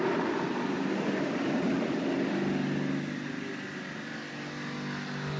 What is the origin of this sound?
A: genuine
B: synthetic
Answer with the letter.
A